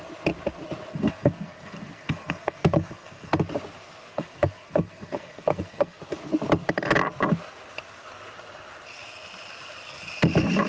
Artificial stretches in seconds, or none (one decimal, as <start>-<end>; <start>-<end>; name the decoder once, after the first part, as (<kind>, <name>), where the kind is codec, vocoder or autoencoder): 0.9-3.4 (codec, SNAC); 4.1-6.0